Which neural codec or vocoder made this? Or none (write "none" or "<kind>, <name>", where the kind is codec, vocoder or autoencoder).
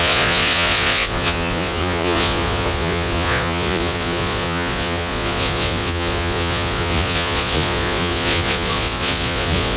vocoder, Vocos